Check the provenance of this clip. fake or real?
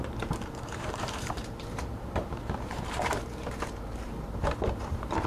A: fake